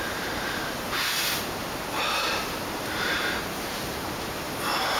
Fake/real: fake